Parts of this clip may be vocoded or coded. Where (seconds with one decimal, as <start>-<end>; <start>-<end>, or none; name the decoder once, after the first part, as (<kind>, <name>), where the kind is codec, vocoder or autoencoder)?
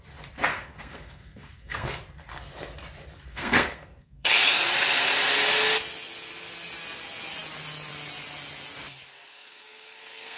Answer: 0.5-2.0 (codec, SNAC); 3.3-4.3; 9.3-10.4